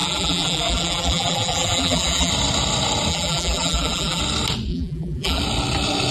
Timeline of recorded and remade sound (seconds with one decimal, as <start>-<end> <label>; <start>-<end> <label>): 0.0-2.3 remade; 2.3-3.1 recorded; 3.1-4.2 remade; 4.2-4.7 recorded; 4.7-5.4 remade; 5.4-6.1 recorded